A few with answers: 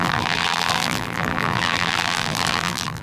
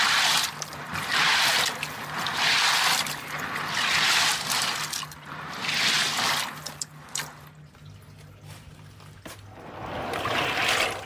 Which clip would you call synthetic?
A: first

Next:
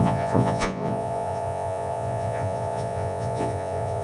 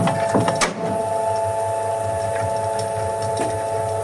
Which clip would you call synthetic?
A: first